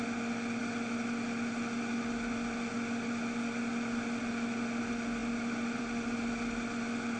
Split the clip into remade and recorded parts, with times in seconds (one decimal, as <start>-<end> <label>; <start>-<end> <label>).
0.0-7.2 recorded